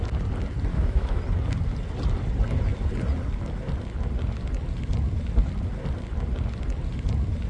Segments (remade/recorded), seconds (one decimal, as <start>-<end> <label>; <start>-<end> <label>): 0.0-0.7 recorded; 0.7-1.2 remade; 1.2-7.5 recorded